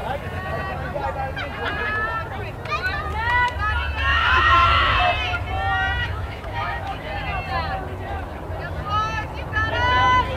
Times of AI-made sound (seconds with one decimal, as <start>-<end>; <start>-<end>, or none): 4.1-5.0; 6.0-7.1